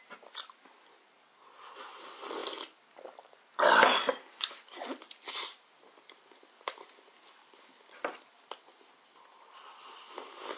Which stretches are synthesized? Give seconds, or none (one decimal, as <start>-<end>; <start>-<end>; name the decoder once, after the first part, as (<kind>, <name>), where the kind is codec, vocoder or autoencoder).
none